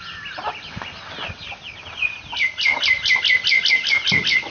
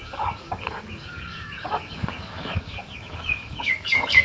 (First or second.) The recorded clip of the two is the first